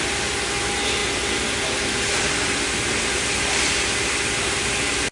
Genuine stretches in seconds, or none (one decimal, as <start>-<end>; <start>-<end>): 0.0-5.1